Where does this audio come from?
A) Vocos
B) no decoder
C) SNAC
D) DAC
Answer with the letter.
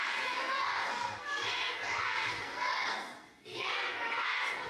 C